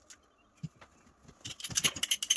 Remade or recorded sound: recorded